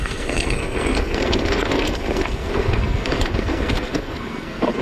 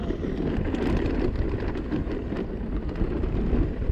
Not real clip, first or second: first